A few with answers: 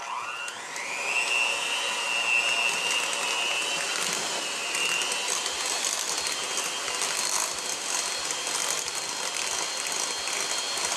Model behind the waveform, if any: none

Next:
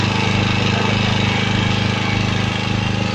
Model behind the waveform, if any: none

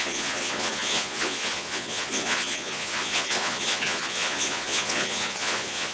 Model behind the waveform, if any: vocoder, Vocos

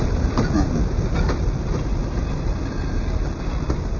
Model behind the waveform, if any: none